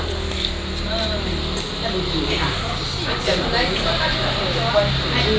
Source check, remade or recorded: recorded